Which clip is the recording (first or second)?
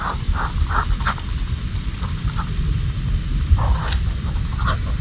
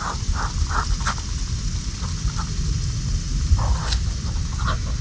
second